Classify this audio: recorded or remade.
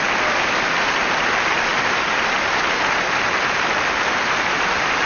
recorded